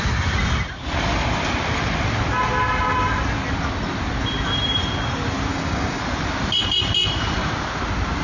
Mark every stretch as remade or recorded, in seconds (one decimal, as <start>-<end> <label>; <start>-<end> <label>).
0.0-5.5 recorded; 5.5-6.0 remade; 6.0-8.2 recorded